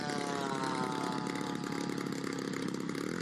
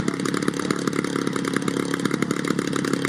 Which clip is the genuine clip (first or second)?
second